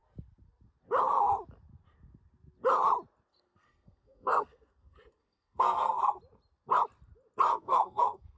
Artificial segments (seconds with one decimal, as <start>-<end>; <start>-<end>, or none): 3.3-6.2; 7.5-8.4